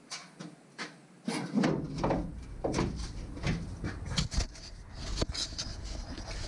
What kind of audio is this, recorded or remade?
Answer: recorded